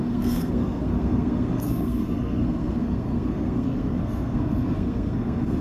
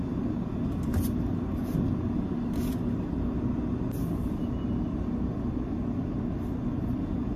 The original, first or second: second